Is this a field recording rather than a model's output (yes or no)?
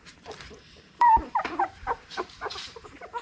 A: no